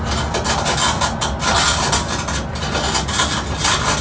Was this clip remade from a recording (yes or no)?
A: no